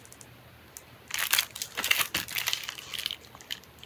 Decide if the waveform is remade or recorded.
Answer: recorded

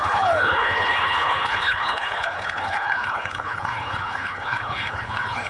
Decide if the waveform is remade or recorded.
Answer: remade